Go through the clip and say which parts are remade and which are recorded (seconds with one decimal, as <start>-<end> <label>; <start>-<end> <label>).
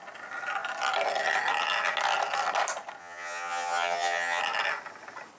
0.0-3.0 recorded; 3.0-4.4 remade; 4.4-5.4 recorded